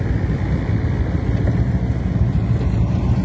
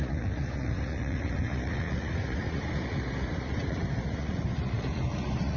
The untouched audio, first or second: first